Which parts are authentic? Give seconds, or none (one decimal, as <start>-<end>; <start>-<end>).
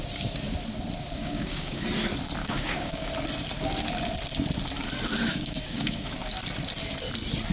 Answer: 0.0-1.2; 1.8-2.4; 3.1-5.3; 6.3-7.5